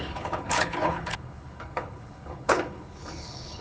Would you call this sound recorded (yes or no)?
no